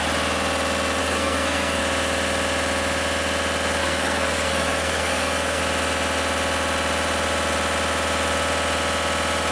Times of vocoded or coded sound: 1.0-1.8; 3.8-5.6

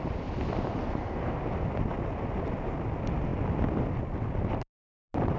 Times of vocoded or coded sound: 0.8-1.4

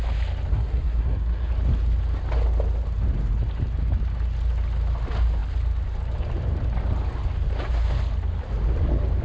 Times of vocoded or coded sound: 0.5-1.5